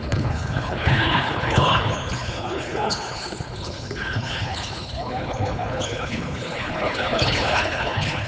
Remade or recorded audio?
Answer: remade